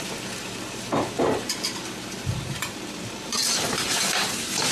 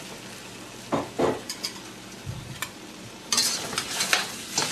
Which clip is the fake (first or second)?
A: first